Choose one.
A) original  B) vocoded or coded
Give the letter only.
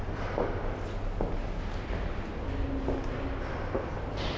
A